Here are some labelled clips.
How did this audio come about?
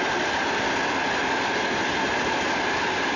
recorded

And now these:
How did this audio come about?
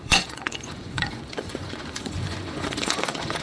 remade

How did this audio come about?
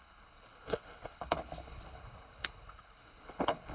remade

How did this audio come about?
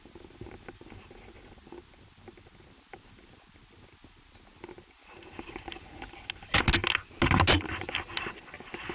recorded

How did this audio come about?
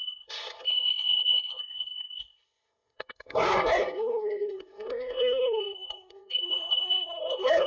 remade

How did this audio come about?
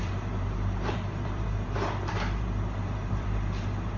remade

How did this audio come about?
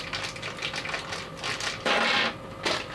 recorded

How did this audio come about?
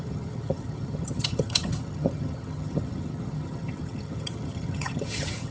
remade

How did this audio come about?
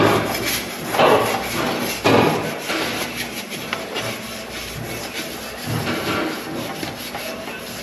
recorded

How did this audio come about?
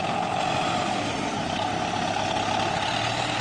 recorded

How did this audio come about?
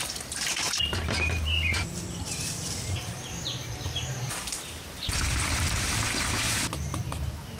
remade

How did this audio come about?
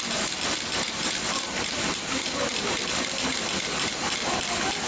recorded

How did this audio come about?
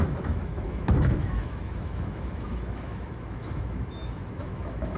remade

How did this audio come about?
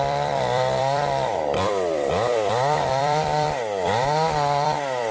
remade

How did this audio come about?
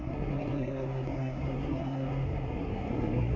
remade